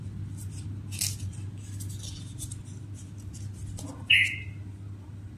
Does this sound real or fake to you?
real